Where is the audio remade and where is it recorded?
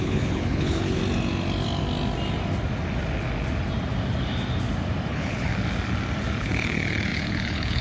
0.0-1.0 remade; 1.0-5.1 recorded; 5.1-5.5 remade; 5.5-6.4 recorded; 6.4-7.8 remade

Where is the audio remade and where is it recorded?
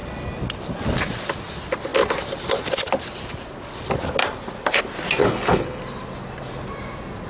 0.0-5.2 recorded; 5.2-5.8 remade; 5.8-7.3 recorded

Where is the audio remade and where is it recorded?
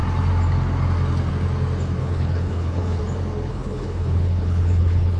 0.0-2.0 recorded; 2.0-3.0 remade; 3.0-3.5 recorded; 3.5-5.2 remade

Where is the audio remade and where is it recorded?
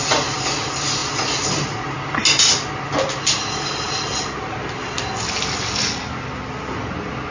0.0-7.3 recorded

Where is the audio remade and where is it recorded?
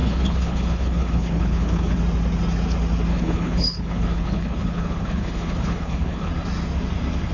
0.0-2.0 remade; 2.0-3.1 recorded; 3.1-6.3 remade; 6.3-7.3 recorded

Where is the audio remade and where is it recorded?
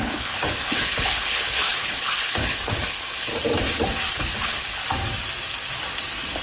0.0-3.3 remade; 3.3-4.1 recorded; 4.1-4.8 remade; 4.8-6.4 recorded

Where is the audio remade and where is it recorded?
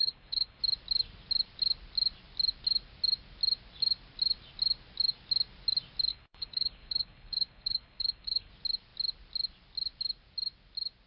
0.0-0.6 remade; 0.6-6.1 recorded; 6.1-8.5 remade; 8.5-11.1 recorded